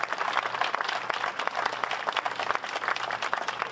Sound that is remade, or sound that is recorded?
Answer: recorded